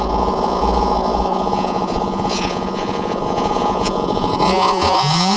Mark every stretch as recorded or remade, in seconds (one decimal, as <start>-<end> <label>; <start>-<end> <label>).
0.0-5.4 remade